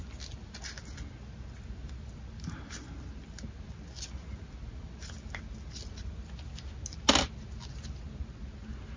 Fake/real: real